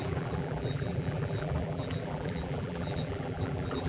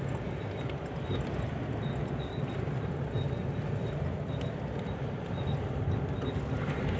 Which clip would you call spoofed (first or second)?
first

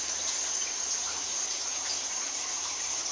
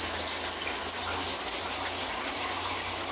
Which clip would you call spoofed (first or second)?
first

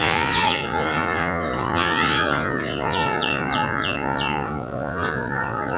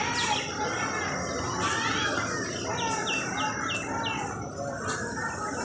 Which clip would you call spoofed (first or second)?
first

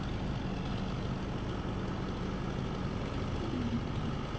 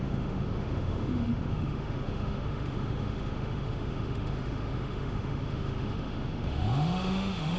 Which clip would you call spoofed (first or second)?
second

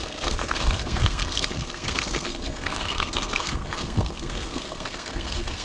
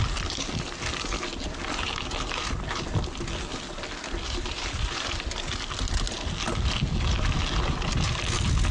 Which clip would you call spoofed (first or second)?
first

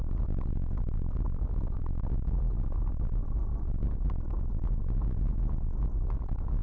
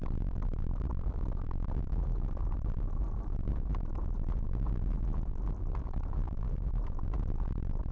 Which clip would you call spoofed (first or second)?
second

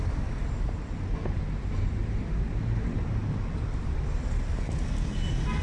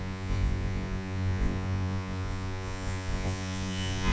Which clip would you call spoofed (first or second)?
second